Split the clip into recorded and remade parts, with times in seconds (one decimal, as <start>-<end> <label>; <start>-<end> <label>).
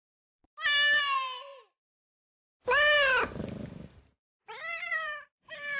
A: 0.0-0.4 remade; 0.4-1.0 recorded; 1.0-1.5 remade; 1.5-3.4 recorded; 3.4-4.1 remade; 4.1-4.7 recorded; 4.7-5.8 remade